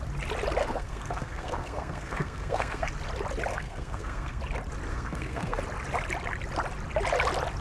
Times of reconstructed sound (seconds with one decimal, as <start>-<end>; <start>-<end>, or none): 0.6-2.9; 3.5-4.4; 4.9-5.6